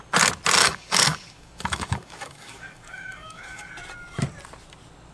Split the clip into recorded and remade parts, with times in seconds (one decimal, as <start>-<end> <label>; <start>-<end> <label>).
0.0-0.6 recorded; 0.6-3.7 remade; 3.7-5.1 recorded

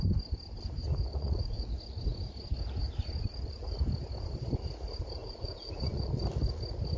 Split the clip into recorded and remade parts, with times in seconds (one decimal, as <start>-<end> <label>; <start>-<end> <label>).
0.0-1.1 recorded; 1.1-1.7 remade; 1.7-5.2 recorded; 5.2-6.1 remade; 6.1-7.0 recorded

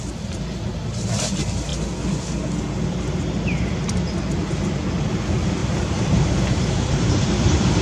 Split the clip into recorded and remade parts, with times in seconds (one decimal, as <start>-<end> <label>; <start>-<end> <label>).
0.0-5.6 recorded; 5.6-7.8 remade

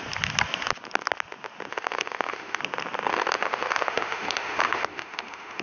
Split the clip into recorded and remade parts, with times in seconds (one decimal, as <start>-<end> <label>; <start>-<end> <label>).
0.0-1.7 recorded; 1.7-2.6 remade; 2.6-3.1 recorded; 3.1-5.6 remade

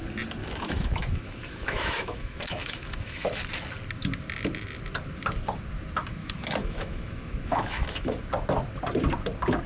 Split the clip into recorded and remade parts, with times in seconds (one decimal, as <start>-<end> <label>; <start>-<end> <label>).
0.0-0.4 recorded; 0.4-3.4 remade; 3.4-6.2 recorded; 6.2-8.2 remade; 8.2-9.7 recorded

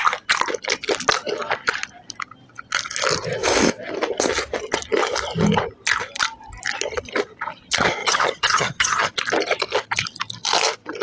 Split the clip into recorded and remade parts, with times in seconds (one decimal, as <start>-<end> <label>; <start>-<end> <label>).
0.0-8.0 recorded; 8.0-9.1 remade; 9.1-11.0 recorded